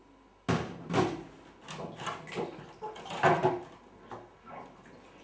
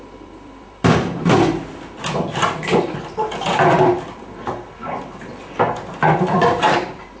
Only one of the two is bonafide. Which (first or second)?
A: first